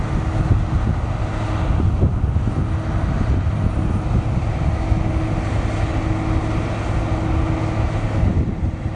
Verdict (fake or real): real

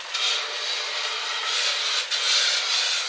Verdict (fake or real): real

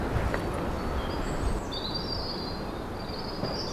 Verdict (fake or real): real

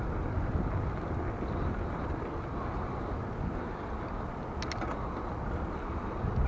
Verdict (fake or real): real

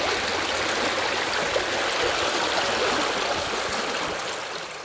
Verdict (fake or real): real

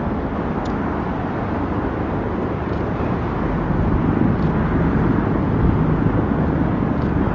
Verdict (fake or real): real